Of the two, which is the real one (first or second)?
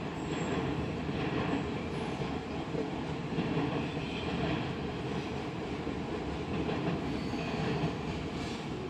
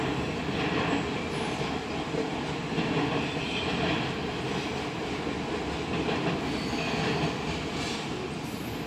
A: second